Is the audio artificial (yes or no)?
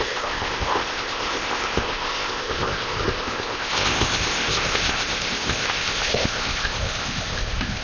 yes